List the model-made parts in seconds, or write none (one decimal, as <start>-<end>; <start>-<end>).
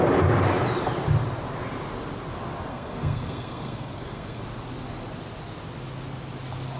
2.7-4.4